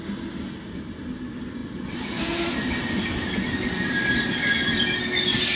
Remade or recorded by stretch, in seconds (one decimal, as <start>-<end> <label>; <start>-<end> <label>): 0.0-5.6 recorded